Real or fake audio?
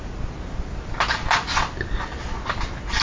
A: real